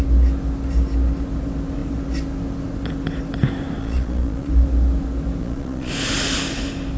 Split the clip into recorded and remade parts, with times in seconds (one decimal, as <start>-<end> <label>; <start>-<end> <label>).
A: 0.0-3.8 recorded; 3.8-4.5 remade; 4.5-5.4 recorded; 5.4-5.9 remade; 5.9-7.0 recorded